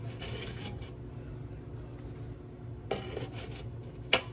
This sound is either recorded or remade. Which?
recorded